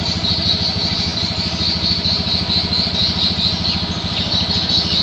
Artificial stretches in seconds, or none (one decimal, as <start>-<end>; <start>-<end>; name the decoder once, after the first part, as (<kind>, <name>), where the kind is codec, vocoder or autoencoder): none